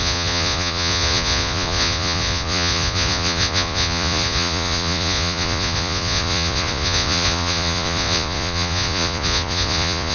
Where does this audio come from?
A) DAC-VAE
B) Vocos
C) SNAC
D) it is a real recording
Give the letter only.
B